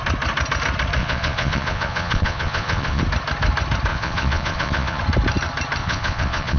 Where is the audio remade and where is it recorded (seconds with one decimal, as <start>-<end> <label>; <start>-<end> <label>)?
0.0-1.0 recorded; 1.0-3.0 remade; 3.0-3.9 recorded; 3.9-5.0 remade; 5.0-5.8 recorded; 5.8-6.6 remade